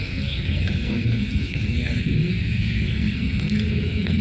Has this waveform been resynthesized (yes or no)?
yes